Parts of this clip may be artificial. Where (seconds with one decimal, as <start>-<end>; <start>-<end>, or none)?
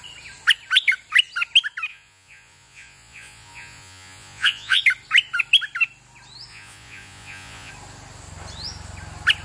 1.9-4.8; 6.5-7.7